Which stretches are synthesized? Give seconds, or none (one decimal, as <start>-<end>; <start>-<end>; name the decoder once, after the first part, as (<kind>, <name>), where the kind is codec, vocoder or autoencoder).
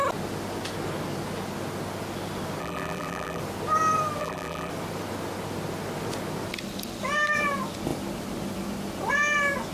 2.6-3.4 (vocoder, BigVGAN v2); 4.2-4.7